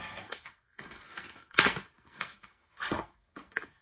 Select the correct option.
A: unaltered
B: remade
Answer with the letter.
B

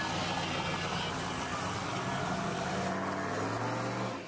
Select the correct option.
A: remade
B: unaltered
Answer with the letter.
B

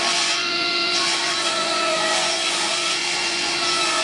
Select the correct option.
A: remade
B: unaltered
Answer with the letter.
A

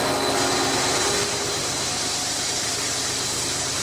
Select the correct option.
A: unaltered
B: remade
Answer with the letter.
A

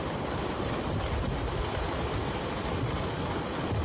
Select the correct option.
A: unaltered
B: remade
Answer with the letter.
B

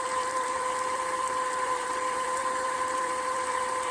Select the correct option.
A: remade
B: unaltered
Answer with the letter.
A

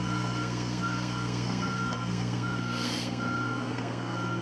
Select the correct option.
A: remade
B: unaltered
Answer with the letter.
A